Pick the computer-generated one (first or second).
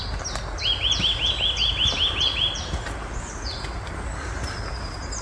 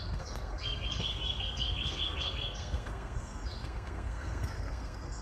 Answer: second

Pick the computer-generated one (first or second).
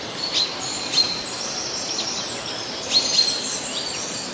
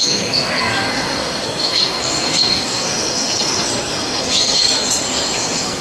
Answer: second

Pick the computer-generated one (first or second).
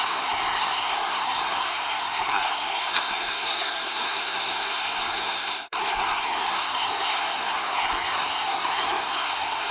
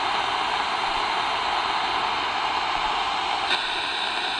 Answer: first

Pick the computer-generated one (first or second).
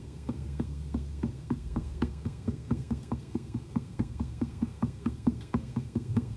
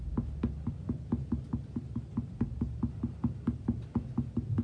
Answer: first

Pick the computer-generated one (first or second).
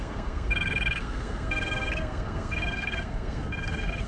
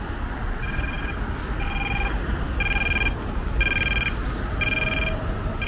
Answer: first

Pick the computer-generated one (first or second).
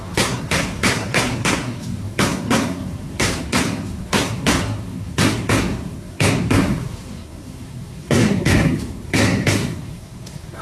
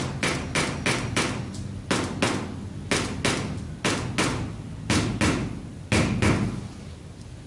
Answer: first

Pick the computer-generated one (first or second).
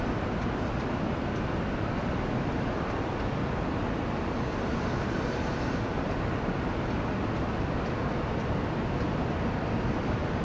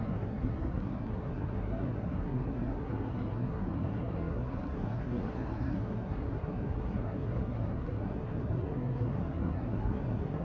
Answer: second